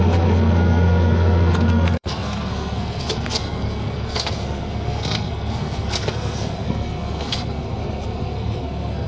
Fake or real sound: fake